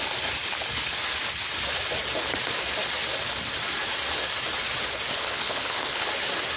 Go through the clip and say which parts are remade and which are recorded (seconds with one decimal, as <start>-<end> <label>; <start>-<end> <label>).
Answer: 0.0-5.1 recorded; 5.1-6.1 remade; 6.1-6.6 recorded